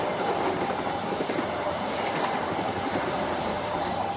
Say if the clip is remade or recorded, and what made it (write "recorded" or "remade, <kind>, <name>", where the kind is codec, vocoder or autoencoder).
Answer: remade, vocoder, BigVGAN v2